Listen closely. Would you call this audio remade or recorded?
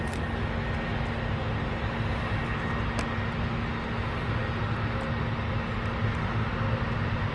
recorded